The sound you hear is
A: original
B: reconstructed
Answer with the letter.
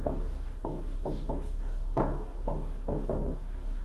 B